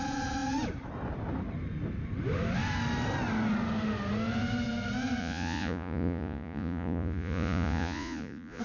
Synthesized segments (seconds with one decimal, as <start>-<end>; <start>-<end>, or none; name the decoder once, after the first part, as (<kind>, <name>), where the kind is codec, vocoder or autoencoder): 5.2-8.6 (vocoder, Vocos)